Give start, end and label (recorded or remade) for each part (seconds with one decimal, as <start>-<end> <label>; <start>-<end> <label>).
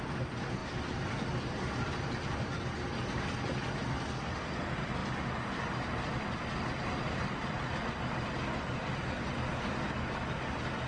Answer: 0.0-10.9 recorded